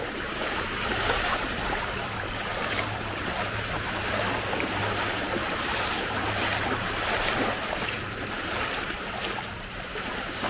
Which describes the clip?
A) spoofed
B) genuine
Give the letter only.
A